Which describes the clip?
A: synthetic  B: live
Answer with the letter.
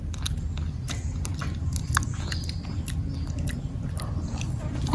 B